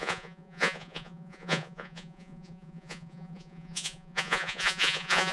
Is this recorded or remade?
remade